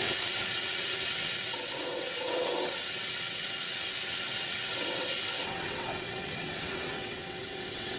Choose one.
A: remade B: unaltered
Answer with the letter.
A